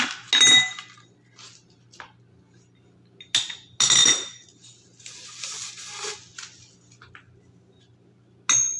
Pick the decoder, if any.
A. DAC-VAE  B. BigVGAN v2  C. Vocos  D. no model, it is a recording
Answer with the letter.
D